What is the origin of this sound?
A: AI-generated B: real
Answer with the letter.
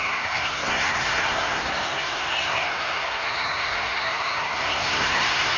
A